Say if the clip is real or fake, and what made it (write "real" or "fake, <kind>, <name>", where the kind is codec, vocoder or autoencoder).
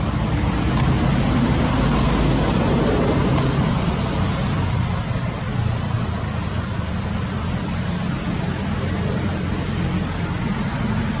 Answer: real